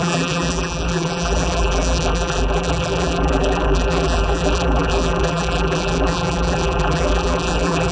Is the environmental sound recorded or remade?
remade